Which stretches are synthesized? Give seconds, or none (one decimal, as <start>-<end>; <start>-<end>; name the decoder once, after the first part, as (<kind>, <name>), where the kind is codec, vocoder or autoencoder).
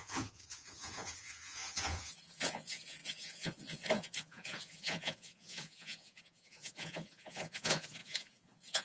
0.0-8.8 (vocoder, Vocos)